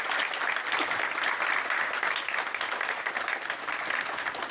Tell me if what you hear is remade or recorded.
recorded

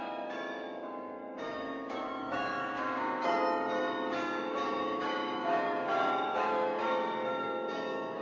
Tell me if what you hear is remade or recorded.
remade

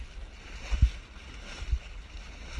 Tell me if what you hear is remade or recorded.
recorded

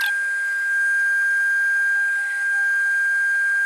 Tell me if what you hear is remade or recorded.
recorded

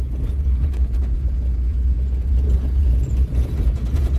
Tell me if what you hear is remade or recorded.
remade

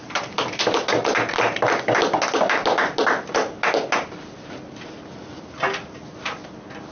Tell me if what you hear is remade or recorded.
recorded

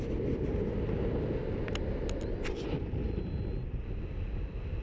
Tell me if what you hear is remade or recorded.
recorded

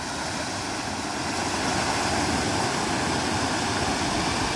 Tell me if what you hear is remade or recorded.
recorded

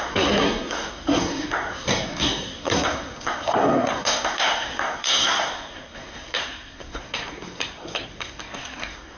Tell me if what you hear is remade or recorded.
remade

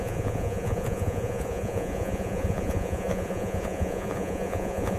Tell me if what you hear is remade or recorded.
remade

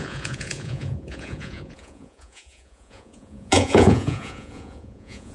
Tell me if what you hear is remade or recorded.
remade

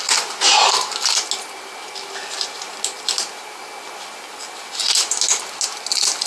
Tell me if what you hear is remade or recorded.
recorded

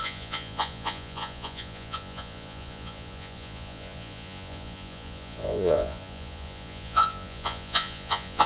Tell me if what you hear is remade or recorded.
remade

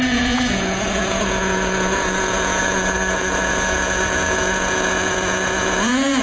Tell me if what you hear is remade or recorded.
remade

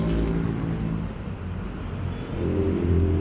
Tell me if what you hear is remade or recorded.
recorded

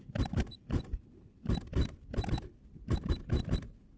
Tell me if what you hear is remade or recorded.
recorded